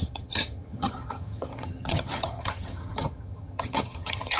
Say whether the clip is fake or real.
fake